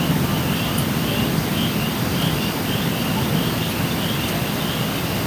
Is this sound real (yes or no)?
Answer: yes